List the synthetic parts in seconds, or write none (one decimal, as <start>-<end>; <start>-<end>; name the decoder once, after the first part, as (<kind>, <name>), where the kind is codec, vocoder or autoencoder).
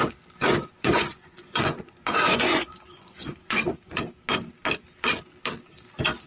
0.5-4.0 (vocoder, Vocos)